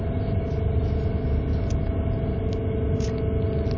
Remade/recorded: recorded